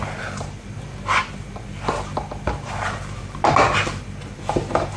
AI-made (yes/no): no